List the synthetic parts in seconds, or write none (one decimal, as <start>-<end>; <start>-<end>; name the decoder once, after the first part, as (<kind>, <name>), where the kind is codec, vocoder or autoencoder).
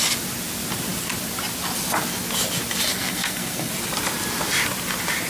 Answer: 2.9-3.7 (codec, SNAC)